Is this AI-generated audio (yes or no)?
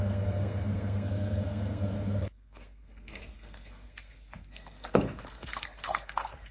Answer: yes